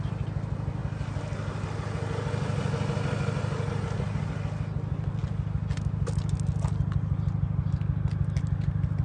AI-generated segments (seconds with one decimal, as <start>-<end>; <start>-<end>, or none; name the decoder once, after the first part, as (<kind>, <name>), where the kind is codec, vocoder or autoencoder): none